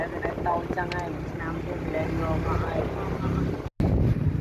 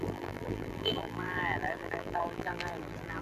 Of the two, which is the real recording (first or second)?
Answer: first